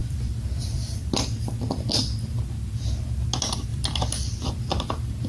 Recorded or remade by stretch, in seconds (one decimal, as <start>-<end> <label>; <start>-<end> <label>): 0.0-1.3 remade; 1.3-3.7 recorded; 3.7-4.5 remade; 4.5-5.3 recorded